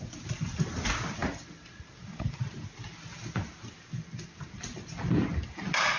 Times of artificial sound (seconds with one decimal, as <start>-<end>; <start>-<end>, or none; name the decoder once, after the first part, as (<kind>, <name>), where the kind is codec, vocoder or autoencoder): none